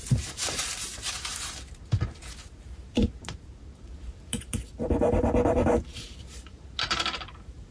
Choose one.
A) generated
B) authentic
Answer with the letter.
A